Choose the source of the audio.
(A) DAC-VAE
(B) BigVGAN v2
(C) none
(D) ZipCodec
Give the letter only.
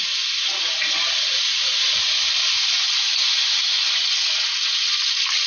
C